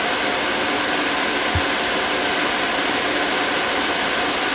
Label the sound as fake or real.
real